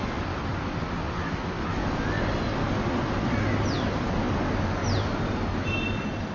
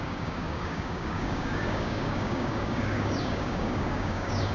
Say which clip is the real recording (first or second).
first